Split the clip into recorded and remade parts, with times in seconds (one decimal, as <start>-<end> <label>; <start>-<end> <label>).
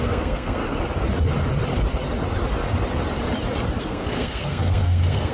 0.0-0.6 remade; 0.6-3.8 recorded; 3.8-5.3 remade